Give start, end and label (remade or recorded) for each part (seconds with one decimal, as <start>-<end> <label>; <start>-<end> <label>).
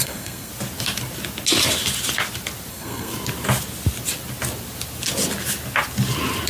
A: 0.0-0.5 remade; 0.5-2.7 recorded; 2.7-3.1 remade; 3.1-6.5 recorded